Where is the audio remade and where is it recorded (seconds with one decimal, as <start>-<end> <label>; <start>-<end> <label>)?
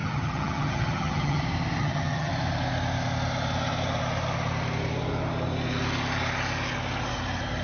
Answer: 0.0-1.4 remade; 1.4-1.8 recorded; 1.8-2.3 remade; 2.3-7.6 recorded